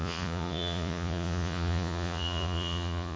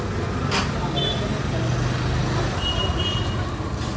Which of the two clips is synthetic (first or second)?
first